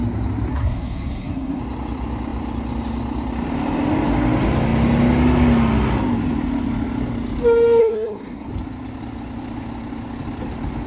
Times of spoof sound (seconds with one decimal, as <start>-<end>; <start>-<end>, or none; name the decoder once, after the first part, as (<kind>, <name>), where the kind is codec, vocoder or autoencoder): 0.5-1.6 (codec, SNAC); 7.8-8.5

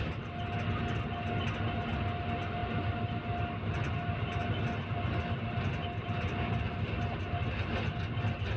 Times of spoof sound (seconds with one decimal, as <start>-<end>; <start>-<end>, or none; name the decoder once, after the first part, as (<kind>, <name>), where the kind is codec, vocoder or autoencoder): none

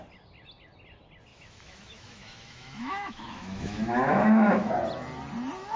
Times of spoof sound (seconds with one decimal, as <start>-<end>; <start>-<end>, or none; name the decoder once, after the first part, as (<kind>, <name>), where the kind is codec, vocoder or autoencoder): 1.3-4.7 (autoencoder, DAC-VAE)

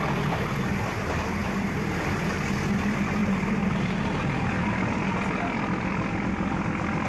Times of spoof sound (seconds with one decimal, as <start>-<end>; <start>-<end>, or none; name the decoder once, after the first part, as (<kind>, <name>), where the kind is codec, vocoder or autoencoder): 1.4-2.3 (vocoder, BigVGAN v2); 3.2-3.7